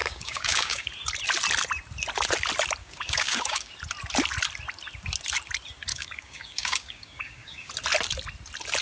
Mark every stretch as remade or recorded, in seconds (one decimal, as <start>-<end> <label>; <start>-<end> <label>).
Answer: 0.0-0.9 remade; 0.9-2.8 recorded; 2.8-3.7 remade; 3.7-5.9 recorded; 5.9-7.7 remade; 7.7-8.8 recorded